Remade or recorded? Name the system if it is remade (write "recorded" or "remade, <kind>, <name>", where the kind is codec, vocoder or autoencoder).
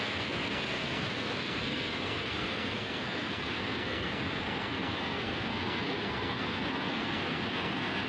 remade, codec, SNAC